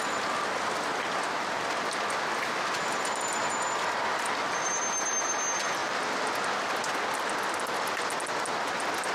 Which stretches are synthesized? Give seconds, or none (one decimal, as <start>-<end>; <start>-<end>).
none